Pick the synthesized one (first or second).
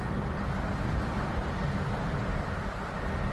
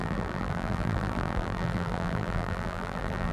second